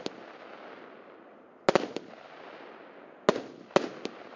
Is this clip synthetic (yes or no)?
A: no